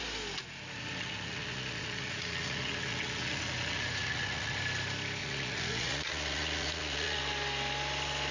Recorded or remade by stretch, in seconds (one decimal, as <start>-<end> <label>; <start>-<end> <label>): 0.0-0.4 recorded; 0.4-4.6 remade; 4.6-5.2 recorded; 5.2-7.2 remade; 7.2-8.3 recorded